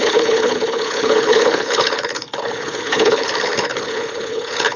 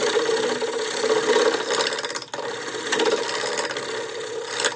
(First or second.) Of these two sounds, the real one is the second